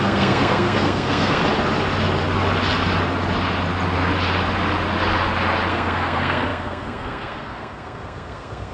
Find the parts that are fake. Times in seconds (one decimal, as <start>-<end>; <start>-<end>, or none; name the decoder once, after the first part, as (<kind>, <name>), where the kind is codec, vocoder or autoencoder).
0.0-1.4 (codec, SNAC); 5.7-8.7